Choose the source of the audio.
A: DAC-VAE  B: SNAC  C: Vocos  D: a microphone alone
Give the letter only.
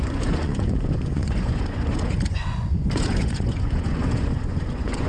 C